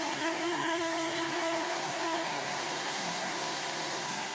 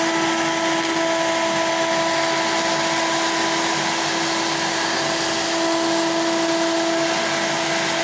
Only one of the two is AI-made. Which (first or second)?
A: first